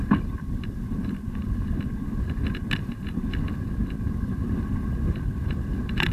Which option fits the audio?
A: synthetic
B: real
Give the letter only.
B